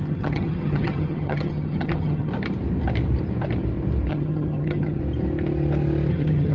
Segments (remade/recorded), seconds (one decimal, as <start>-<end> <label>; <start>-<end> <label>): 0.0-2.3 remade; 2.3-4.1 recorded; 4.1-5.0 remade; 5.0-6.1 recorded; 6.1-6.5 remade